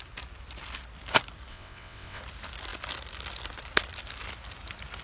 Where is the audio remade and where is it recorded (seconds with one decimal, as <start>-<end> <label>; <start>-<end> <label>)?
0.0-1.5 recorded; 1.5-2.2 remade; 2.2-5.0 recorded